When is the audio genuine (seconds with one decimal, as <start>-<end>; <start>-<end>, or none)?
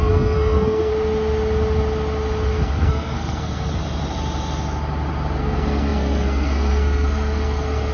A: 0.9-2.5; 3.8-5.4